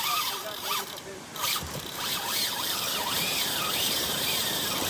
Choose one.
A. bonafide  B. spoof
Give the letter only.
B